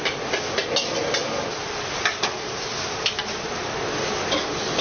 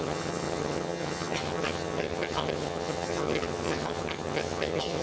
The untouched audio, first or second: first